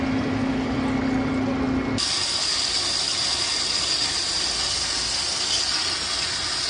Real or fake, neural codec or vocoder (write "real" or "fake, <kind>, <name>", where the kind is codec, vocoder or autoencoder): real